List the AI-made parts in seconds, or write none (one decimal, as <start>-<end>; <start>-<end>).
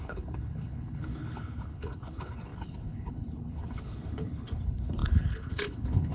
0.0-6.1